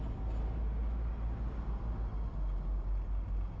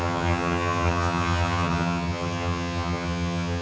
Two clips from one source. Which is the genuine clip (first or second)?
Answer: first